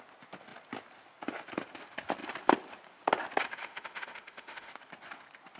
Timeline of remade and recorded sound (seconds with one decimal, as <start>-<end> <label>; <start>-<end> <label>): 0.0-3.5 recorded; 3.5-4.7 remade; 4.7-5.6 recorded

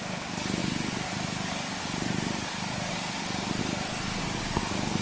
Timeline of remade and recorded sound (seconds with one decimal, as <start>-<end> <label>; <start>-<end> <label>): 0.0-5.0 recorded

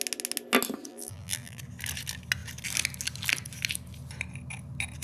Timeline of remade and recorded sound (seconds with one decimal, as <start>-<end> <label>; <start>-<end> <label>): 0.0-0.9 recorded; 0.9-1.6 remade; 1.6-5.0 recorded

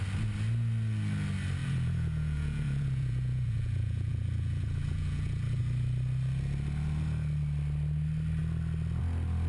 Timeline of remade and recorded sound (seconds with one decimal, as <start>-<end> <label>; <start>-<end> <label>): 0.0-1.6 recorded; 1.6-5.6 remade; 5.6-9.5 recorded

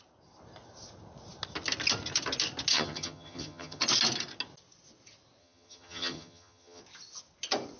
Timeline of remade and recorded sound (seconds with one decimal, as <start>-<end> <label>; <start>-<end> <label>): 0.0-2.7 recorded; 2.7-3.8 remade; 3.8-5.4 recorded; 5.4-6.8 remade; 6.8-7.8 recorded

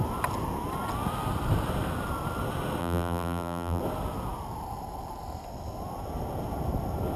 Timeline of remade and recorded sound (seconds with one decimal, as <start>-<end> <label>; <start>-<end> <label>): 0.0-2.8 recorded; 2.8-3.8 remade; 3.8-7.2 recorded

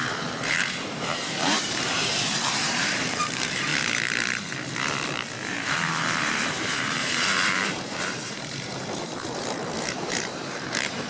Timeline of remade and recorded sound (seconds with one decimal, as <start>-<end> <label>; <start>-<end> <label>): 0.0-3.7 remade; 3.7-5.5 recorded; 5.5-11.1 remade